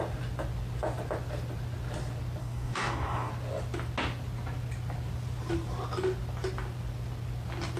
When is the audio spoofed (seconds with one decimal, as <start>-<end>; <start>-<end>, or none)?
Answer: 2.4-3.3